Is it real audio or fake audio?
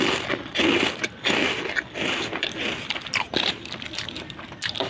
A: real